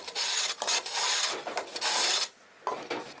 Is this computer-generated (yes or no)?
no